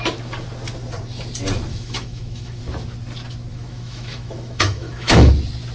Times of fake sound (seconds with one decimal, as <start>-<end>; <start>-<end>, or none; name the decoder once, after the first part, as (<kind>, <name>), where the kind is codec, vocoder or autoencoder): 1.7-2.6 (autoencoder, DAC-VAE); 3.5-5.3